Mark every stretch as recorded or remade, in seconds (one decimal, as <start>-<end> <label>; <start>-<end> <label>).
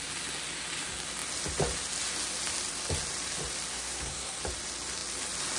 0.0-3.7 recorded; 3.7-4.4 remade; 4.4-5.6 recorded